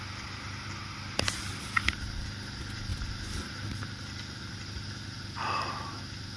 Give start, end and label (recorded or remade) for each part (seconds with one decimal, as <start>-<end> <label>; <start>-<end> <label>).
0.0-6.4 recorded